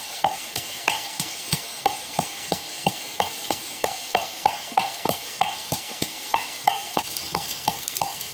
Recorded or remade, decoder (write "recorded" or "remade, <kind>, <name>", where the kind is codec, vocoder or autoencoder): remade, codec, SNAC